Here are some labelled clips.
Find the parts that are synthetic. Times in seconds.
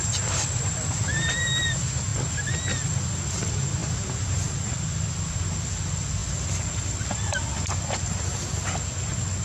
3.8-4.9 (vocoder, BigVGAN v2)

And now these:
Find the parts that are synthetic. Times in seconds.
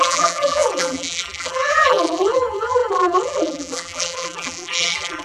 0.0-5.2 (vocoder, BigVGAN v2)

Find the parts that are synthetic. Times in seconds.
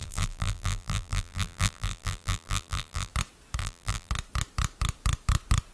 0.0-3.1 (vocoder, BigVGAN v2); 3.6-4.1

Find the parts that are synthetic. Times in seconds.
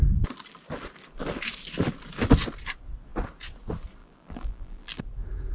4.0-5.0 (vocoder, BigVGAN v2)